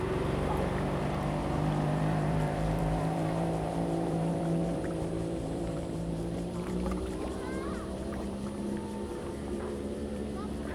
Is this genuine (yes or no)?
no